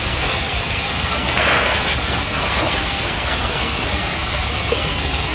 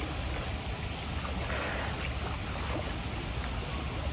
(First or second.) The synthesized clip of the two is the first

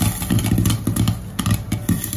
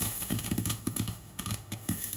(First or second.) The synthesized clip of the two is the second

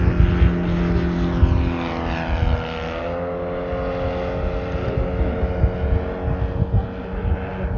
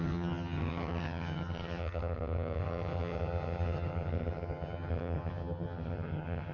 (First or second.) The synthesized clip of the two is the second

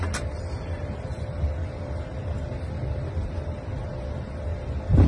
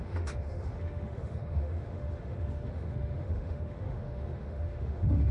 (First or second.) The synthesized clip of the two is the second